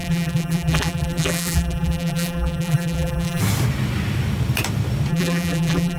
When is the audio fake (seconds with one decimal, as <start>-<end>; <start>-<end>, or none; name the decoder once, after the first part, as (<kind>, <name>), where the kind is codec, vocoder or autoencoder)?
0.0-3.4 (vocoder, BigVGAN v2); 5.1-6.0